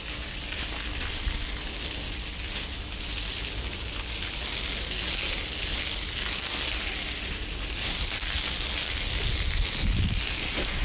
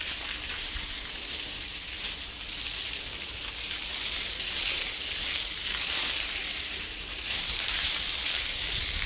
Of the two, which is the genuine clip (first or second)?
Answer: first